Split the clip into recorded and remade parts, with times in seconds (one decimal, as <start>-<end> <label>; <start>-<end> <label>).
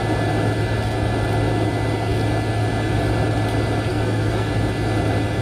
0.0-3.9 recorded; 3.9-4.5 remade; 4.5-5.4 recorded